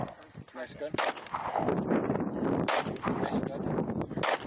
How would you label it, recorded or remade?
recorded